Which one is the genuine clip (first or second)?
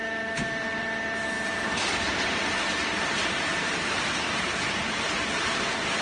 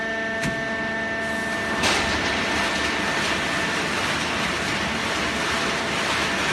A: second